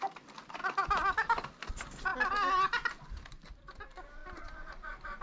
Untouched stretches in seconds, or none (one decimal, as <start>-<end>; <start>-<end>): 0.6-1.7; 2.1-3.7; 4.2-4.7